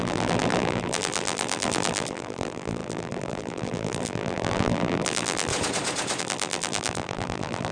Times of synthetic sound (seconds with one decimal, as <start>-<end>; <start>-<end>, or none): 0.0-5.5; 6.2-7.7